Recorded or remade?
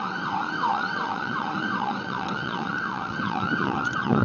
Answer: remade